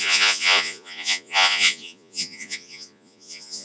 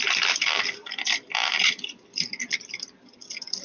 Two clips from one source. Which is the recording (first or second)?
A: second